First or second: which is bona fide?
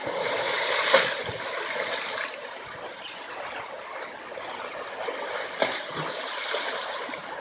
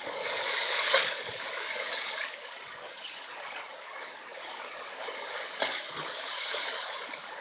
first